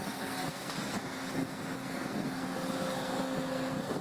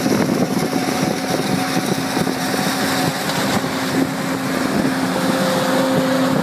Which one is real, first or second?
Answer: second